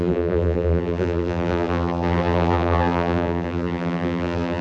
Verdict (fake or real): fake